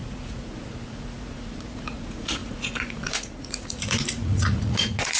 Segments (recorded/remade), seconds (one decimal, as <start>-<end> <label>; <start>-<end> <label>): 0.0-5.2 remade